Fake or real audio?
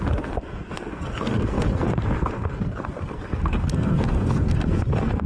fake